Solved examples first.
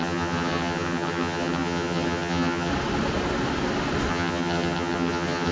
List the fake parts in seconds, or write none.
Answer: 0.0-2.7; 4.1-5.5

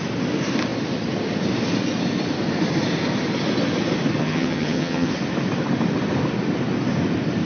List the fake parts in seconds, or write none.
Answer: 4.2-5.1

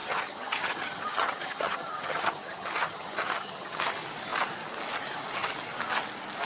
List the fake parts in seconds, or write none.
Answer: 0.0-3.8

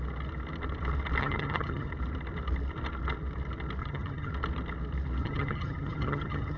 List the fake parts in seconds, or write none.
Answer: 1.2-1.9; 3.8-4.3; 5.2-6.6

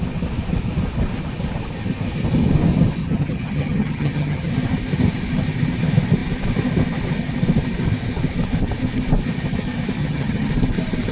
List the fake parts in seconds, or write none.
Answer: 3.0-4.5; 10.0-10.5

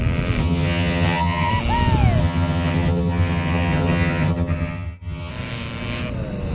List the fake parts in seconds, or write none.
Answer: 0.4-1.5; 2.2-5.3